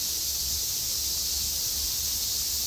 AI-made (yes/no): no